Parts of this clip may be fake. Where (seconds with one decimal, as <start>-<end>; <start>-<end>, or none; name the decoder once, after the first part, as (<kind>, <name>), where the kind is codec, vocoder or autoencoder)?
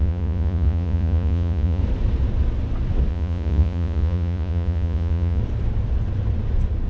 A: 0.0-1.8 (vocoder, Vocos); 3.1-5.4